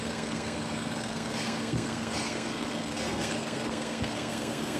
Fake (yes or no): yes